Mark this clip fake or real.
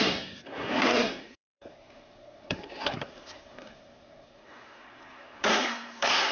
fake